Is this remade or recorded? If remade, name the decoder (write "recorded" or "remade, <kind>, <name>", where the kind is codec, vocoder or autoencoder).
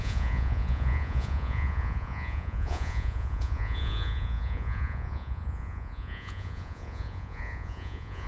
remade, vocoder, Vocos